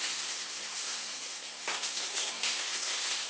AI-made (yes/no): yes